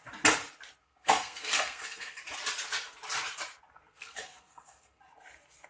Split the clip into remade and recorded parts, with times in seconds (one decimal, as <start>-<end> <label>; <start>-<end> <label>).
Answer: 0.0-0.8 recorded; 0.8-2.2 remade; 2.2-3.9 recorded; 3.9-5.0 remade; 5.0-5.7 recorded